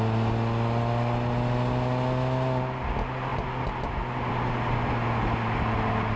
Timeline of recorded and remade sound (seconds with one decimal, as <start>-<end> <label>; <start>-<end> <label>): 0.0-6.2 recorded